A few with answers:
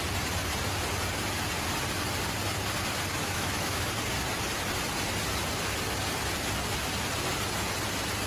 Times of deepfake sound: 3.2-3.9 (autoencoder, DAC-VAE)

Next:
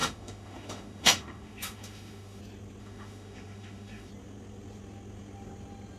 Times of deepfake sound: 0.0-2.4 (autoencoder, DAC-VAE); 2.8-4.1

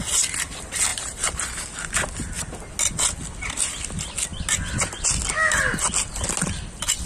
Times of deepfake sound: 0.9-1.6 (vocoder, BigVGAN v2)

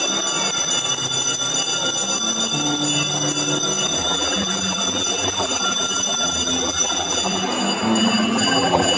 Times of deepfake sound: 4.0-7.5 (vocoder, BigVGAN v2); 8.0-9.0

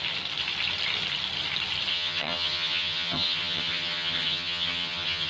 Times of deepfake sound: 1.9-5.3 (vocoder, HiFi-GAN)